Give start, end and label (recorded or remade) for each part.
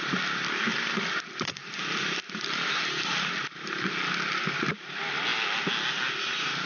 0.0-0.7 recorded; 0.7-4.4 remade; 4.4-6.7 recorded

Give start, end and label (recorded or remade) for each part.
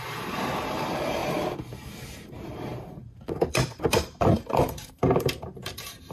0.0-6.1 remade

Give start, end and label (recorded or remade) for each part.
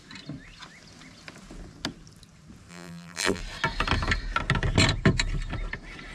0.0-2.7 recorded; 2.7-3.4 remade; 3.4-6.1 recorded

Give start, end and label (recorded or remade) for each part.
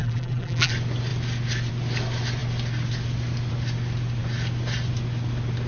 0.0-0.7 remade; 0.7-5.7 recorded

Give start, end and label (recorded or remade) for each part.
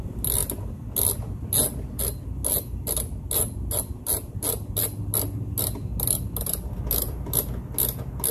0.0-8.3 recorded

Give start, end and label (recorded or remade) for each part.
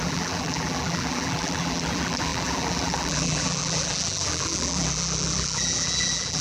0.0-6.4 remade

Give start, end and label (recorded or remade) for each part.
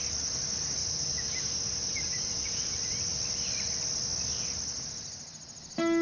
0.0-0.8 recorded; 0.8-2.7 remade; 2.7-6.0 recorded